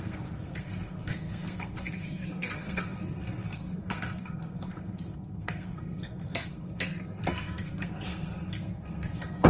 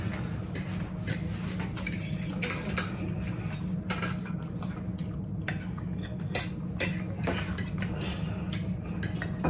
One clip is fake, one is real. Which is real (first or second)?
second